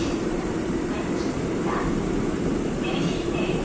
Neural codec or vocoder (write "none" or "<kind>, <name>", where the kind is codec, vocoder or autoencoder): vocoder, BigVGAN v2